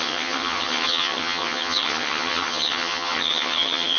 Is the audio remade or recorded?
remade